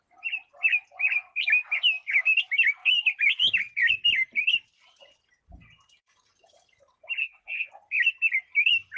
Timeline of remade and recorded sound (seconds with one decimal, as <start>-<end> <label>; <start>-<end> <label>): 0.0-7.2 recorded; 7.2-7.7 remade; 7.7-9.0 recorded